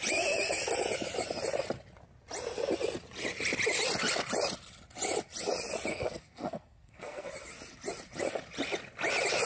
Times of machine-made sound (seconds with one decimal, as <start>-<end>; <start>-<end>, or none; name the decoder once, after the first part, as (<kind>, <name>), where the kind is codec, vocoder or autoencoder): 5.9-7.3 (codec, SNAC)